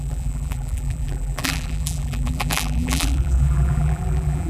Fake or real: fake